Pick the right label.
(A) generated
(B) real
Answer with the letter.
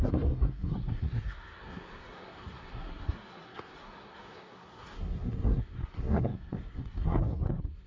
A